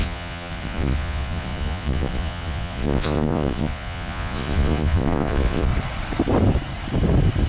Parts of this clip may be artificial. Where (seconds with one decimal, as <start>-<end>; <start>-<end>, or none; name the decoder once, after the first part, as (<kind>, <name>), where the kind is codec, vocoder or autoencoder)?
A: 0.0-5.7 (vocoder, Vocos)